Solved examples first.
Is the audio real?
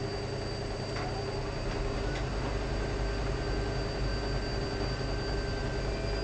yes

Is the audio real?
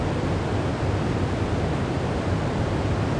yes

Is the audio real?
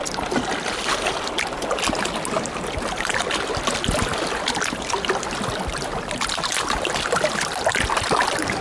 yes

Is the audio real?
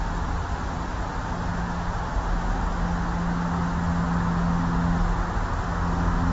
yes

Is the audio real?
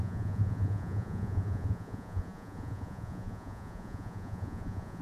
no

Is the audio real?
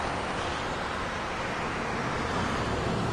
yes